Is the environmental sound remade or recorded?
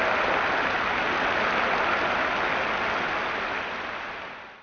recorded